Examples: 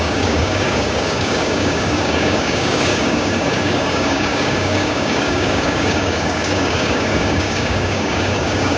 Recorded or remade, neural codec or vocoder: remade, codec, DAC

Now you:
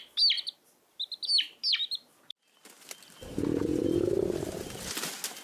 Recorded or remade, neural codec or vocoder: recorded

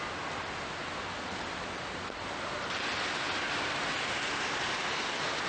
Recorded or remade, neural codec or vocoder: remade, vocoder, BigVGAN v2